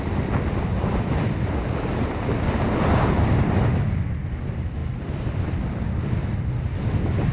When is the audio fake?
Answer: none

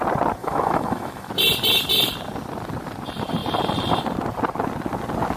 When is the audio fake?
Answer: 0.4-1.3 (autoencoder, DAC-VAE)

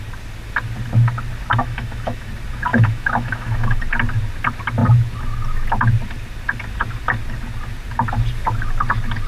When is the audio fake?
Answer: 1.6-2.3 (autoencoder, DAC-VAE); 2.7-3.8

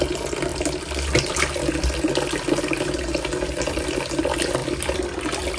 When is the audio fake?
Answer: none

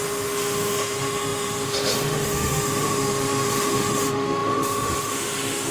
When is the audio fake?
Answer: 0.0-5.7 (autoencoder, DAC-VAE)

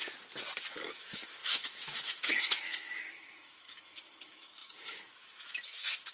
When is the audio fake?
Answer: 0.6-6.1 (autoencoder, DAC-VAE)

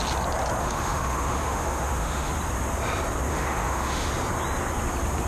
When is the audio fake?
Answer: 0.6-2.3 (autoencoder, DAC-VAE); 3.3-4.1

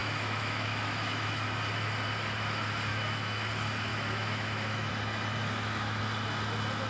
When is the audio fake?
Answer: 0.0-1.3 (autoencoder, DAC-VAE); 2.9-3.5; 3.9-4.9; 5.4-6.0